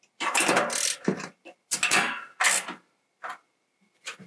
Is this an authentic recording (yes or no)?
yes